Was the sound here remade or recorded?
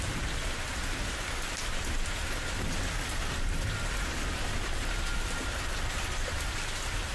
recorded